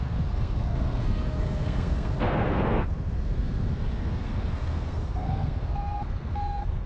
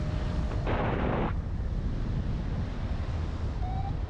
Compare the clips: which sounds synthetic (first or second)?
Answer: first